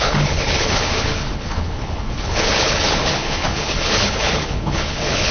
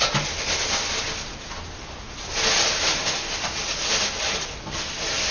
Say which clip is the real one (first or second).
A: second